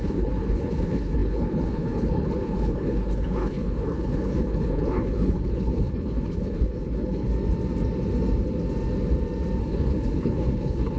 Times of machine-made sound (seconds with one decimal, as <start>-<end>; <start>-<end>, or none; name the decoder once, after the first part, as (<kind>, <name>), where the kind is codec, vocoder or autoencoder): 0.0-7.3 (codec, HILCodec); 9.6-11.0